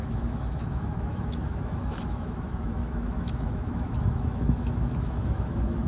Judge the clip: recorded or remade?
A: remade